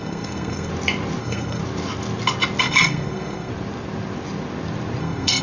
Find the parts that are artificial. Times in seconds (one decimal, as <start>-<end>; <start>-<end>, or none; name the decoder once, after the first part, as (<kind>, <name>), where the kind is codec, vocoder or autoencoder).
0.0-0.7 (codec, SNAC); 1.2-1.6; 2.6-3.5; 5.0-5.4